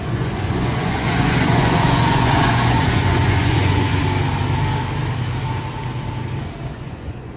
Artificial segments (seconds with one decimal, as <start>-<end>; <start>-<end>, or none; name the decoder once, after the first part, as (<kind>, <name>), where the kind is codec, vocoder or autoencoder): 0.0-4.0 (vocoder, Vocos); 6.7-7.4